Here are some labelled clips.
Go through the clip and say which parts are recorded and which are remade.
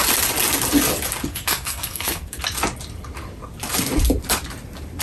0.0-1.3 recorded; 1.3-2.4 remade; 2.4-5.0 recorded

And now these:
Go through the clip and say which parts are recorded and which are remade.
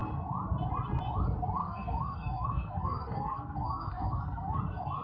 0.0-1.6 recorded; 1.6-4.6 remade; 4.6-5.0 recorded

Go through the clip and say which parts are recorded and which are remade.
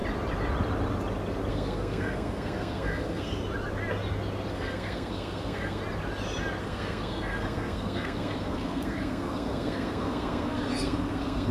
0.0-1.5 recorded; 1.5-3.4 remade; 3.4-4.5 recorded; 4.5-5.8 remade; 5.8-6.6 recorded; 6.6-11.5 remade